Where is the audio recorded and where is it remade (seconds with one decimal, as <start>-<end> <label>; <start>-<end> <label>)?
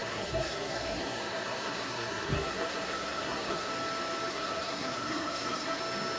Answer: 0.0-3.7 remade; 3.7-4.3 recorded; 4.3-5.8 remade; 5.8-6.2 recorded